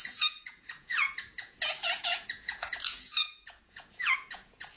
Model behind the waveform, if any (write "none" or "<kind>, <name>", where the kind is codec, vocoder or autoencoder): vocoder, Vocos